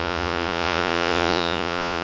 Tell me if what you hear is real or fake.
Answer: fake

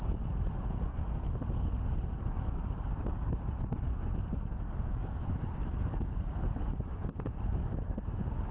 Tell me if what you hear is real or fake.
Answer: real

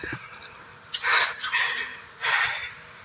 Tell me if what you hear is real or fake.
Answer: real